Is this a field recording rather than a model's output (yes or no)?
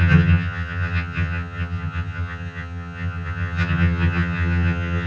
no